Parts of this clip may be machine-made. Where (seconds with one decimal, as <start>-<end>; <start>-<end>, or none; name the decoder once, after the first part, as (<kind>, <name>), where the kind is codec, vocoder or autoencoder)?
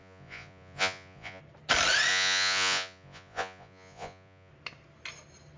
0.0-1.4 (vocoder, Vocos); 2.1-4.5